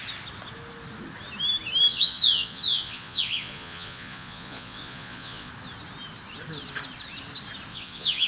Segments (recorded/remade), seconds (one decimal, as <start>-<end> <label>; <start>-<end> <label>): 0.0-1.9 recorded; 1.9-5.5 remade; 5.5-7.7 recorded; 7.7-8.3 remade

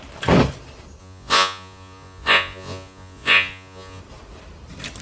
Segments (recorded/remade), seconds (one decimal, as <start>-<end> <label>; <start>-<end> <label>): 0.0-1.0 recorded; 1.0-4.0 remade; 4.0-5.0 recorded

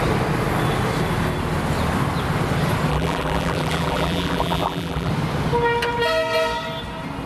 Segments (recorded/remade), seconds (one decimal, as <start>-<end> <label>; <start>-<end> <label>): 0.0-2.9 recorded; 2.9-5.1 remade; 5.1-7.3 recorded

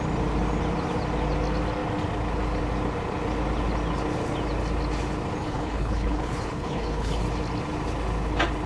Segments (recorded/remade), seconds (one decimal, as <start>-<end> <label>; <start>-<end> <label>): 0.0-5.4 recorded; 5.4-7.2 remade; 7.2-8.7 recorded

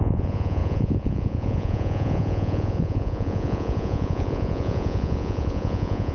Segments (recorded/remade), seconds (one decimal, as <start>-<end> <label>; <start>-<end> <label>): 0.0-6.1 remade